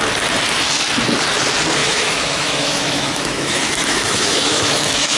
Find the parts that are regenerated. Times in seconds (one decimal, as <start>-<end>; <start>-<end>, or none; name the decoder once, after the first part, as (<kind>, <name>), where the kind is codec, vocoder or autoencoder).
1.8-5.2 (autoencoder, DAC-VAE)